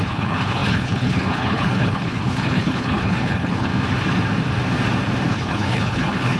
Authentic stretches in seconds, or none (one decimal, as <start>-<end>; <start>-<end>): 3.7-5.3